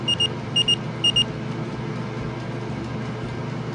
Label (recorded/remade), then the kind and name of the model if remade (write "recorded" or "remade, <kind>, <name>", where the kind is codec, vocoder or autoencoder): recorded